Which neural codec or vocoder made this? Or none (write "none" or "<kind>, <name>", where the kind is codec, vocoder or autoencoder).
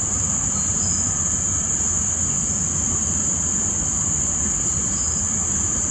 vocoder, BigVGAN v2